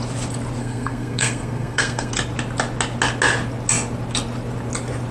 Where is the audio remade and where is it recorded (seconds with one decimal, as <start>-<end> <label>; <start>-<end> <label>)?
0.0-0.6 recorded; 0.6-2.1 remade; 2.1-5.1 recorded